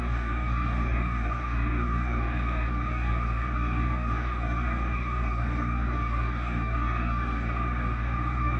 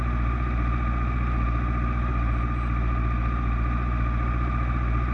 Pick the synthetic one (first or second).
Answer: first